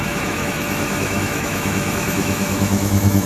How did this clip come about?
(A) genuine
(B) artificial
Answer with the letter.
B